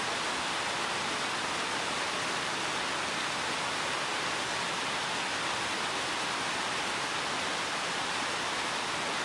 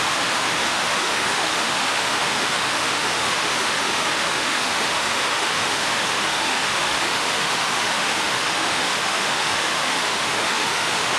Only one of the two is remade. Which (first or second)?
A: second